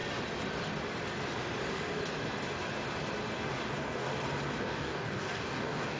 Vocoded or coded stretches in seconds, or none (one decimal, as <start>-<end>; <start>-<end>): 3.6-4.1; 4.6-6.0